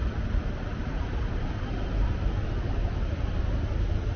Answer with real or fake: real